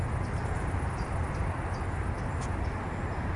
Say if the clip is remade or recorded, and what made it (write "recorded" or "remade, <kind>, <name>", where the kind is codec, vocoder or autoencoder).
recorded